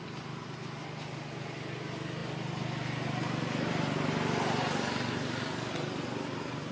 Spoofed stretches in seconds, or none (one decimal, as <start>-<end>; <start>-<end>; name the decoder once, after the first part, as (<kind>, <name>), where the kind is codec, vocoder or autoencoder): none

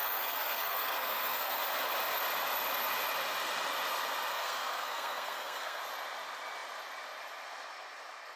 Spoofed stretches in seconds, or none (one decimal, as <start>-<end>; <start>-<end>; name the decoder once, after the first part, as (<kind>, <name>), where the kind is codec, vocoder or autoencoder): 0.0-1.6 (codec, SNAC); 4.3-5.8

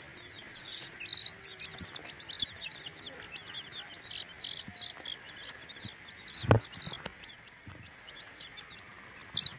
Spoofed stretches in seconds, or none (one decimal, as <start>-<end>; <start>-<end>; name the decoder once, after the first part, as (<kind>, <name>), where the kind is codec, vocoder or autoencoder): 0.5-1.0 (vocoder, Vocos); 7.1-8.6